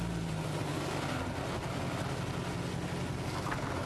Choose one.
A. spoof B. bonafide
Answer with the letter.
B